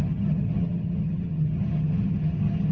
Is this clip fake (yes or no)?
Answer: yes